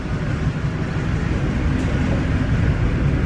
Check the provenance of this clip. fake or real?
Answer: real